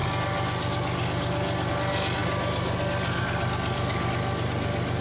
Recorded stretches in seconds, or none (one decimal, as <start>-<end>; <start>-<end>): 0.0-5.0